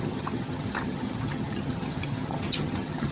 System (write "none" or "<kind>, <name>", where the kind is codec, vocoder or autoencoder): vocoder, HiFi-GAN